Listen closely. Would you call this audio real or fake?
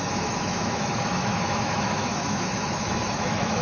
fake